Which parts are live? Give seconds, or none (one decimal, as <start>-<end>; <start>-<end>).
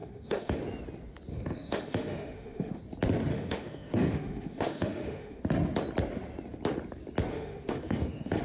0.6-1.3; 2.8-3.3; 5.4-7.3